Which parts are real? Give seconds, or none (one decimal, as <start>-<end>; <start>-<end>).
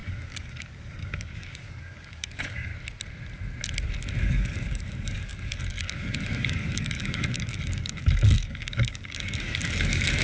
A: 2.7-4.2